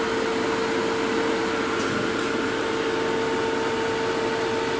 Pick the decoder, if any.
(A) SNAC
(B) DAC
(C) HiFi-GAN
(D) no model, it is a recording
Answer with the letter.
D